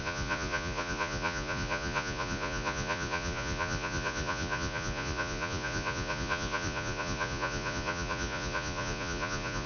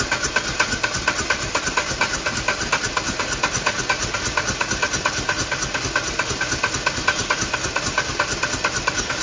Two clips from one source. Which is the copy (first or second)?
first